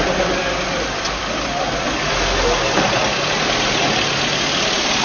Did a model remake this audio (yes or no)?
no